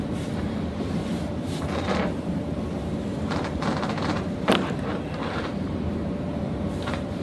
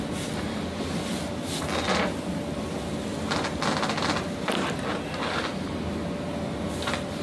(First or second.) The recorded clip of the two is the second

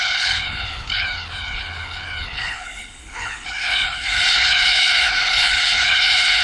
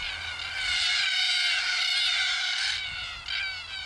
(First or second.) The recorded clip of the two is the second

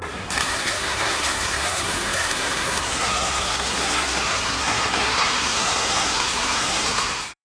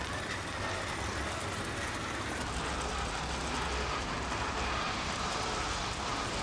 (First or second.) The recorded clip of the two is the second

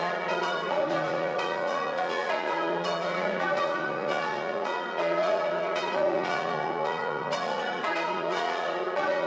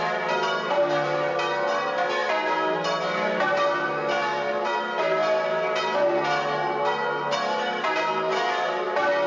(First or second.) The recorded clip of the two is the second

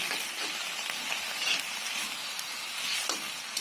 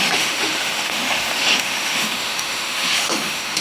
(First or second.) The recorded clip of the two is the first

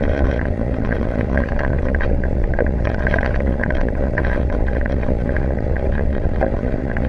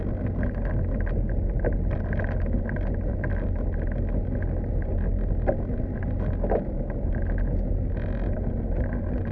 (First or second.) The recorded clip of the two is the second